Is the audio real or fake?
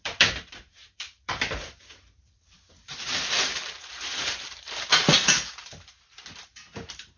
fake